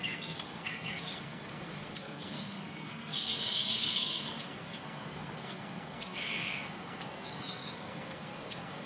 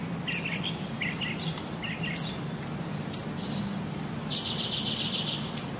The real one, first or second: second